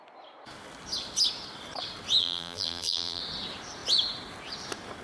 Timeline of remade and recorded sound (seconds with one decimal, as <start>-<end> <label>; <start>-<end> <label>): 0.0-2.2 recorded; 2.2-3.2 remade; 3.2-5.0 recorded